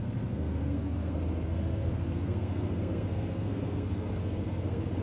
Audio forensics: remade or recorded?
remade